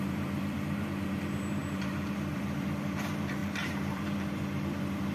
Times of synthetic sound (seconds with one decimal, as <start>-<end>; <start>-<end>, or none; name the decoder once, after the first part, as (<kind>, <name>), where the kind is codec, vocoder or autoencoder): 0.0-5.1 (vocoder, BigVGAN v2)